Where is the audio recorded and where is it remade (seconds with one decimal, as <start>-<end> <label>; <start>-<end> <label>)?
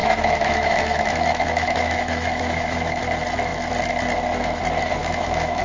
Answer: 0.0-3.0 remade; 3.0-5.0 recorded; 5.0-5.6 remade